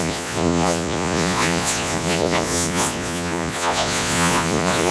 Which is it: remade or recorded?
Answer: remade